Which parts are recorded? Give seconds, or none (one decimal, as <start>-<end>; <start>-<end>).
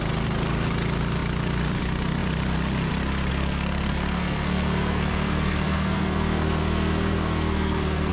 0.0-3.3